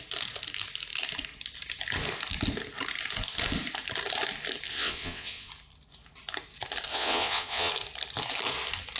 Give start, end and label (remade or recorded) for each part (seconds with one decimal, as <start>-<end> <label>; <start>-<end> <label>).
0.0-4.7 recorded; 4.7-5.5 remade; 5.5-6.9 recorded; 6.9-7.7 remade; 7.7-9.0 recorded